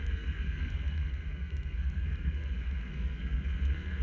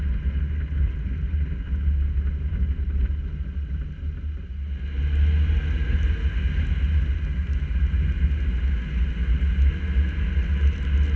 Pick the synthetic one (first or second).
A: first